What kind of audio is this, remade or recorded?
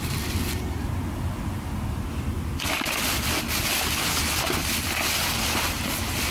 recorded